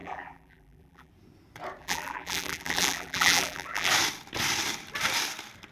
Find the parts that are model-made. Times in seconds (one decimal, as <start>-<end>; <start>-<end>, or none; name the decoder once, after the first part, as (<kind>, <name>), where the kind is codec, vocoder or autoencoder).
0.0-1.1 (vocoder, BigVGAN v2); 1.8-3.9